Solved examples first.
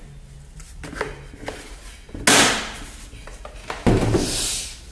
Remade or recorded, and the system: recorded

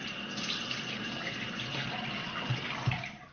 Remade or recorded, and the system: recorded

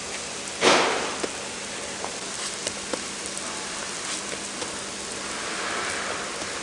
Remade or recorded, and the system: remade, vocoder, BigVGAN v2